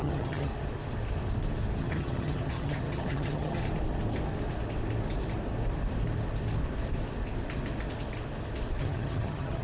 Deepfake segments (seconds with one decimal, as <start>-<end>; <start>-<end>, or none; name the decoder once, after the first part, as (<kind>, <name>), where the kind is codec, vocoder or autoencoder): 0.0-0.5 (vocoder, HiFi-GAN); 1.8-3.6; 8.8-9.6

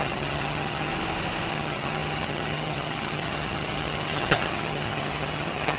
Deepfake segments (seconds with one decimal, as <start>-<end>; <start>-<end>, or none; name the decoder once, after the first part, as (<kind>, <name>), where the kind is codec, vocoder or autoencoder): 0.0-0.9 (vocoder, HiFi-GAN); 1.5-5.8

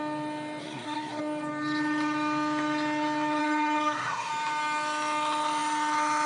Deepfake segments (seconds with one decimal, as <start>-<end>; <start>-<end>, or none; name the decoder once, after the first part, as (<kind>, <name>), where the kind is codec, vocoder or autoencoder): 0.6-1.2 (codec, SNAC); 3.4-4.3

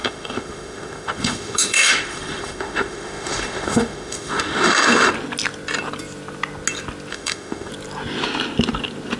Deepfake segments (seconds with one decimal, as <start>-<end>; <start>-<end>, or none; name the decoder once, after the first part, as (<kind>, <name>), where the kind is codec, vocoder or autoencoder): 0.0-5.1 (autoencoder, DAC-VAE); 7.1-7.7